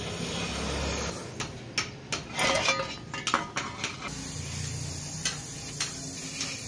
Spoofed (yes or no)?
no